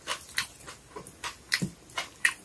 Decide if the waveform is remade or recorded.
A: recorded